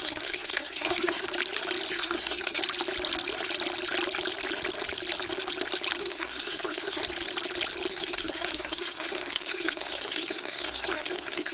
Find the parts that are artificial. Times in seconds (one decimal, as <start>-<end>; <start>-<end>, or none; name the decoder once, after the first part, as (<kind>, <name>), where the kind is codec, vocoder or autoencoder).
0.0-1.3 (codec, SNAC); 1.9-2.6; 6.0-7.0; 7.9-11.5